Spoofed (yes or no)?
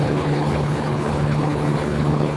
yes